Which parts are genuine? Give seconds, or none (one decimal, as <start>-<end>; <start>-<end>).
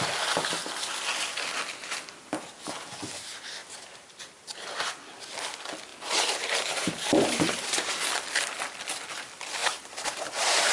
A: 0.0-3.6; 5.0-5.9; 7.9-9.6